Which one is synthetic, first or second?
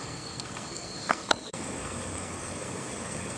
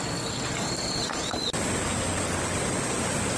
first